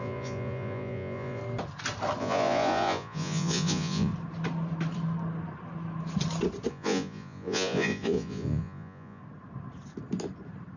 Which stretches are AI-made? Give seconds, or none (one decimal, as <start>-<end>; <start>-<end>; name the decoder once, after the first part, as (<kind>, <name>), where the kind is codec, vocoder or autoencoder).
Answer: 0.0-1.4 (vocoder, Vocos); 2.2-4.1; 6.7-9.2